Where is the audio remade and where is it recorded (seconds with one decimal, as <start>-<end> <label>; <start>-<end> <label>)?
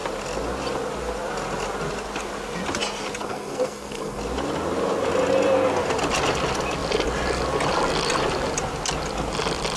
0.0-3.2 recorded; 3.2-4.2 remade; 4.2-9.8 recorded